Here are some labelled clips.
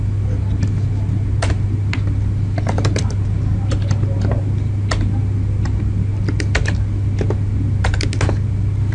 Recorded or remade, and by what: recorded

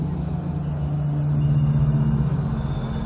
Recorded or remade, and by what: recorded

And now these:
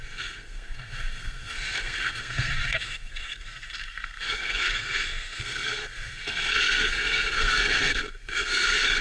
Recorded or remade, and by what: remade, codec, SNAC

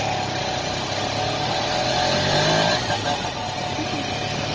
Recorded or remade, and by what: recorded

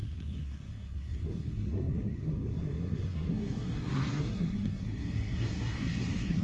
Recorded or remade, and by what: remade, codec, SNAC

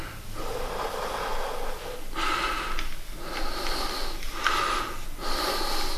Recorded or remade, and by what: recorded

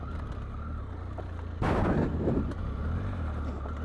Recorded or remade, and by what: recorded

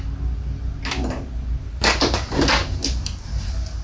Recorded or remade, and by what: recorded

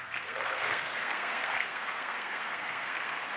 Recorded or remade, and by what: remade, codec, SNAC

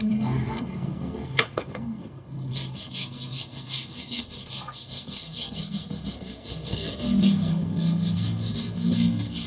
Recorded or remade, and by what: remade, codec, SNAC